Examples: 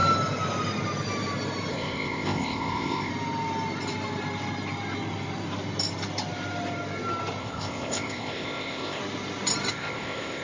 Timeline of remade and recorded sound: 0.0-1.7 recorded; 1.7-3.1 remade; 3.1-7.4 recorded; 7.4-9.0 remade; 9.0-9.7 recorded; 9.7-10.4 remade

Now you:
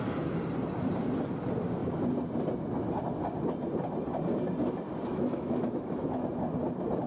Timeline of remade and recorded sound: 0.0-5.1 recorded; 5.1-6.3 remade; 6.3-7.1 recorded

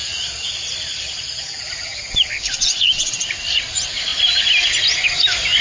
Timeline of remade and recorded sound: 0.0-1.7 remade; 1.7-2.5 recorded; 2.5-3.1 remade; 3.1-5.6 recorded

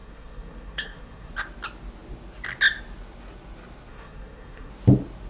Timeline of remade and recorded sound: 0.0-1.3 remade; 1.3-3.9 recorded; 3.9-4.7 remade; 4.7-5.3 recorded

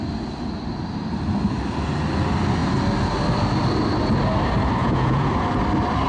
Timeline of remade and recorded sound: 0.0-4.8 recorded; 4.8-5.3 remade; 5.3-6.1 recorded

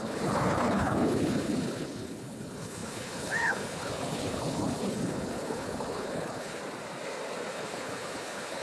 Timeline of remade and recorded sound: 0.0-6.6 remade; 6.6-7.5 recorded; 7.5-8.6 remade

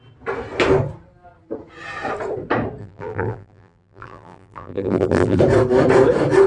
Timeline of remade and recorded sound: 0.0-2.8 recorded; 2.8-5.4 remade; 5.4-6.5 recorded

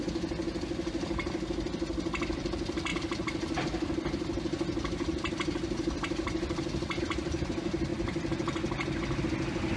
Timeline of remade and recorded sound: 0.0-9.8 recorded